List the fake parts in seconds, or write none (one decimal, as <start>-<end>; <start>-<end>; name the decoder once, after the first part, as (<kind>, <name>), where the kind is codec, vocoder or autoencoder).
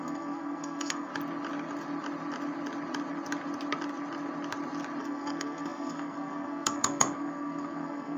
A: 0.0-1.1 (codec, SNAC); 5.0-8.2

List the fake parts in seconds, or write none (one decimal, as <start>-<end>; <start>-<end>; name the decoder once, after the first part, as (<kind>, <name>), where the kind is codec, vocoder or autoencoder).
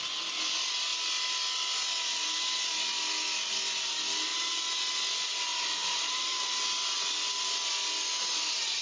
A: 4.3-4.9 (vocoder, BigVGAN v2); 5.5-6.6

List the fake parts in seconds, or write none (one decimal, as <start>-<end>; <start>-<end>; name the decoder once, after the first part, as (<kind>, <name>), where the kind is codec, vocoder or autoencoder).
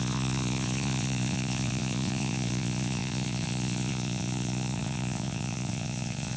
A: 0.0-6.4 (vocoder, Vocos)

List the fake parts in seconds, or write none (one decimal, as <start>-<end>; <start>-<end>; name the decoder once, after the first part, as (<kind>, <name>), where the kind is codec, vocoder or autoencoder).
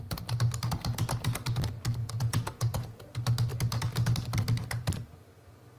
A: 2.0-3.1 (vocoder, Vocos)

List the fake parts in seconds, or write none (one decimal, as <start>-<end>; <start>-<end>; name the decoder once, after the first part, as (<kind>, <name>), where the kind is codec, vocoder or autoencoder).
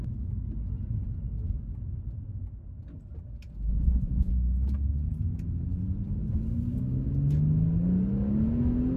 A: 3.7-4.3 (vocoder, Vocos)